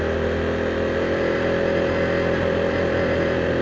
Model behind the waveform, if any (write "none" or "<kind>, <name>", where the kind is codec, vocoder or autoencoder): none